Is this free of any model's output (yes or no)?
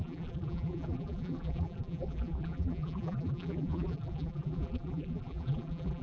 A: no